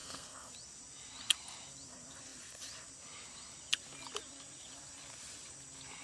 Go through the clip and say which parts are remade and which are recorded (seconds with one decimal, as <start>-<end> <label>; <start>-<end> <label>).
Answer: 0.0-0.5 remade; 0.5-6.0 recorded